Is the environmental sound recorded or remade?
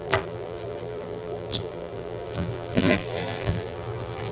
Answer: remade